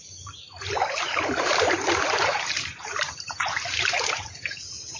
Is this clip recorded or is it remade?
remade